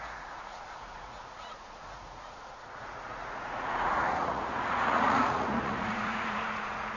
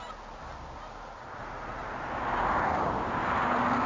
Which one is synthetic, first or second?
first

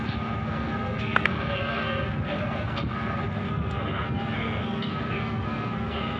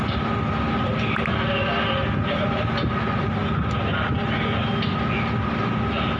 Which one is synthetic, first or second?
first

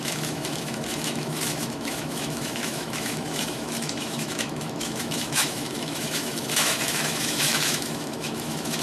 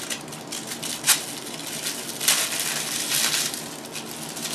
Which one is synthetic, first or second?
first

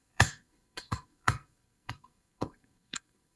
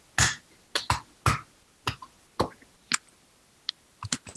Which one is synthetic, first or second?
first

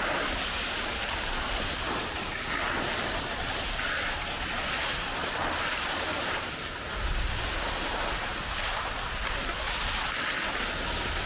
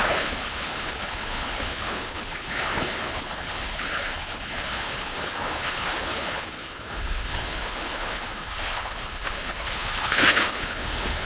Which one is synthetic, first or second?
second